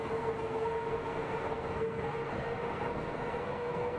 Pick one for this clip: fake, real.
fake